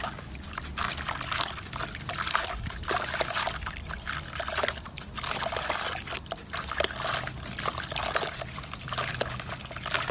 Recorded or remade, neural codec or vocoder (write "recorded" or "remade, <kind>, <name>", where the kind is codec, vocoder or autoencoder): recorded